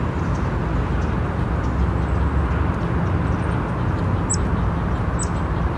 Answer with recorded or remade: recorded